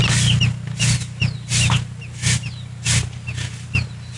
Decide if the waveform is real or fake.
real